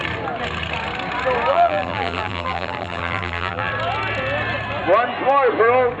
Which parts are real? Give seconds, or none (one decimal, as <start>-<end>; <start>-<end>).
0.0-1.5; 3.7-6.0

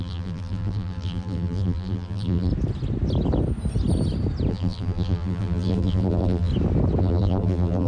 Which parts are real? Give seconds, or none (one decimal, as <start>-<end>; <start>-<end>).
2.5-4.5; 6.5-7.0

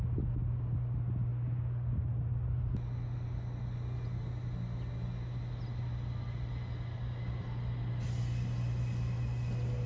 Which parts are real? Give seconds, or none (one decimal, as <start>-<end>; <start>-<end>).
0.0-9.9

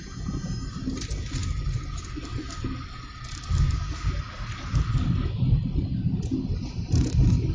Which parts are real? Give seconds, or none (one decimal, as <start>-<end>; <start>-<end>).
0.0-7.5

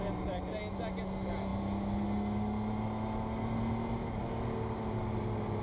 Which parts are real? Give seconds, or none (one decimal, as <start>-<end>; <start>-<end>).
0.0-5.6

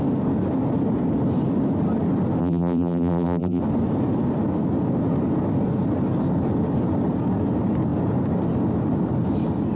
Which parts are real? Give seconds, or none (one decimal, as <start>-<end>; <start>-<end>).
0.0-2.4; 3.6-9.8

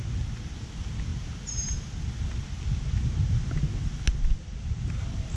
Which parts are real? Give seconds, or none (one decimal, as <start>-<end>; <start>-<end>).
0.0-5.4